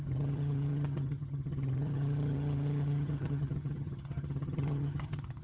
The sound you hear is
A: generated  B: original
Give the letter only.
A